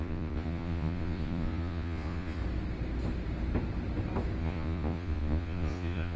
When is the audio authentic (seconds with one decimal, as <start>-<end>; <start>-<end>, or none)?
2.4-4.4